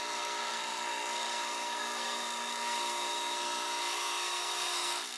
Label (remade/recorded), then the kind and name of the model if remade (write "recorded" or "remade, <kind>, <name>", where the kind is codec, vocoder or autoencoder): remade, codec, SNAC